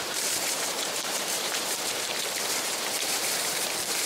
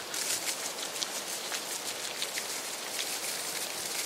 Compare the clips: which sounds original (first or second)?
second